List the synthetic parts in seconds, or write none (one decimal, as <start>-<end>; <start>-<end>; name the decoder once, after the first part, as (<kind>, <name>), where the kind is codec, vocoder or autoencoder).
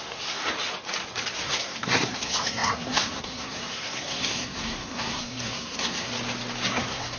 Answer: 0.0-0.4 (codec, SNAC); 1.5-6.1; 6.7-7.2